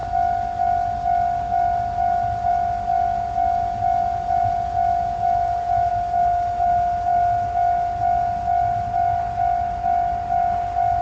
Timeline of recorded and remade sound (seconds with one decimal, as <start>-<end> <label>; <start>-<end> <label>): 0.0-2.9 recorded; 2.9-5.9 remade; 5.9-11.0 recorded